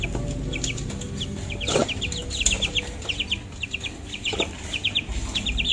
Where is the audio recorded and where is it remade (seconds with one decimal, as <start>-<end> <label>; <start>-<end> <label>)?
0.0-5.7 remade